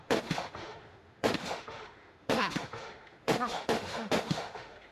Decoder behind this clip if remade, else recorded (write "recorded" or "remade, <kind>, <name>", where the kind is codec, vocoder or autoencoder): remade, autoencoder, DAC-VAE